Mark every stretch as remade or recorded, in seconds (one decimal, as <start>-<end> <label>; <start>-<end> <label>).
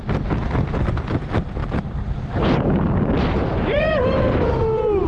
0.0-5.1 recorded